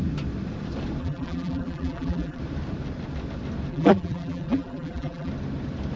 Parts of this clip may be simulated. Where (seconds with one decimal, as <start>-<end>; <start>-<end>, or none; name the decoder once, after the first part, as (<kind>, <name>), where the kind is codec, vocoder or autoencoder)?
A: 1.0-2.4 (vocoder, BigVGAN v2); 3.7-5.3